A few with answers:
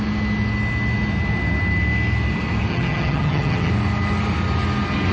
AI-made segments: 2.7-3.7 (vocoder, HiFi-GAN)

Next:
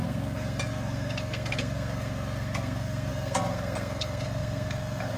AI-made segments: 0.0-5.2 (codec, SNAC)

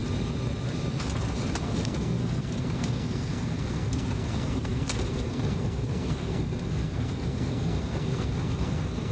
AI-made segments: 1.6-9.1 (codec, SNAC)

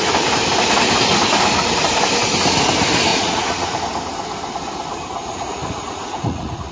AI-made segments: 3.1-3.8 (vocoder, Vocos); 5.2-6.7

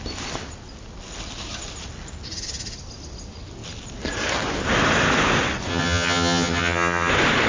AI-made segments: 5.7-7.1 (vocoder, HiFi-GAN)